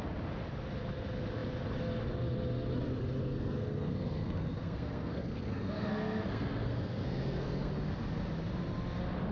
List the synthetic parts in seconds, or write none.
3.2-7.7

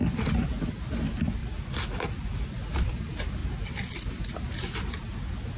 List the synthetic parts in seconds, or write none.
none

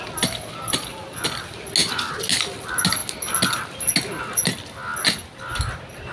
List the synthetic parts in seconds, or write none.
none